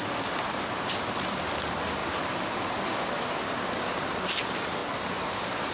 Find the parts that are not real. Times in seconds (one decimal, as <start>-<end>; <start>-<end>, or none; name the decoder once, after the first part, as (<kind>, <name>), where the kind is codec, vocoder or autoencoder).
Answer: 2.0-4.1 (vocoder, BigVGAN v2)